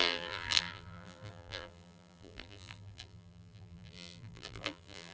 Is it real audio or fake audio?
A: fake